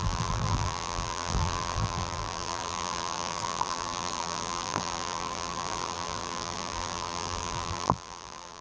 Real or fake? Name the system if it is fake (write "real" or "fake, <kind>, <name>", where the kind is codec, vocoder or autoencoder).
fake, vocoder, BigVGAN v2